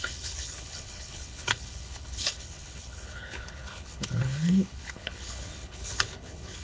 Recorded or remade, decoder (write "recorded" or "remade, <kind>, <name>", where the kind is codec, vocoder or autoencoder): remade, codec, HILCodec